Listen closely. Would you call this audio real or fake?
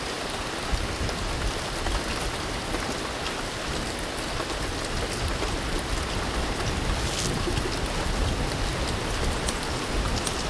real